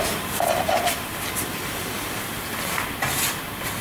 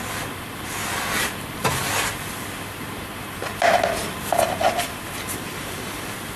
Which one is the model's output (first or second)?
first